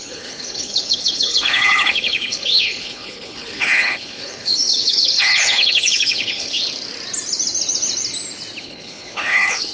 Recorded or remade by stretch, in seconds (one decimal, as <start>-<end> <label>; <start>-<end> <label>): 0.0-6.6 remade; 6.6-8.6 recorded; 8.6-9.7 remade